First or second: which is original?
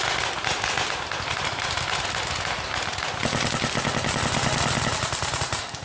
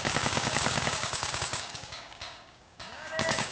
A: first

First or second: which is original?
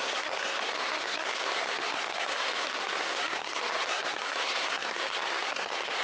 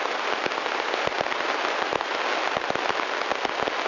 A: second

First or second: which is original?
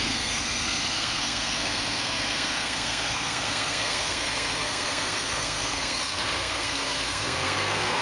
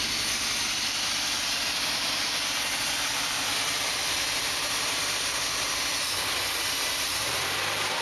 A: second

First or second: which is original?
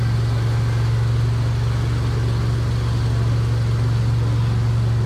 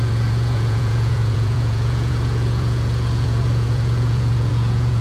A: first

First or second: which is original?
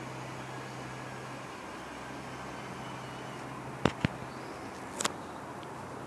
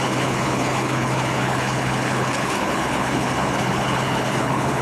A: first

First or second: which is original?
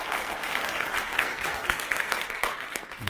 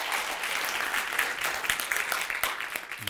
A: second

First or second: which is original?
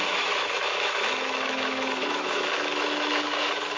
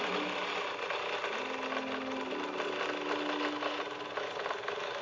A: second